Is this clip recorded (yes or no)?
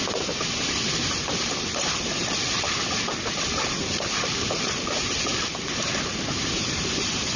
no